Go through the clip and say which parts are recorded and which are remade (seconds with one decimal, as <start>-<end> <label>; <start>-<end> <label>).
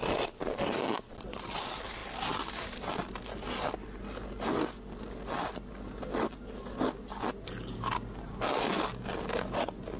0.0-10.0 recorded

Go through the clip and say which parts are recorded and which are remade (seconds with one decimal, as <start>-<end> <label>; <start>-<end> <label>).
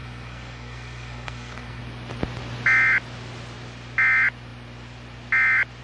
0.0-1.8 remade; 1.8-5.8 recorded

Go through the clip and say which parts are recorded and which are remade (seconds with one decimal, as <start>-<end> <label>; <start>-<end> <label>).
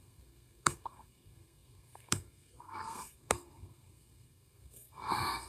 0.0-5.5 remade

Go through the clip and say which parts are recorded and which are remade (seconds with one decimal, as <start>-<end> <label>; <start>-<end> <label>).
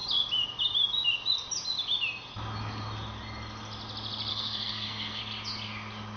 0.0-4.3 recorded; 4.3-5.2 remade; 5.2-6.2 recorded